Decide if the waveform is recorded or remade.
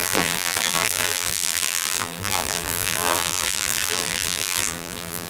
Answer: remade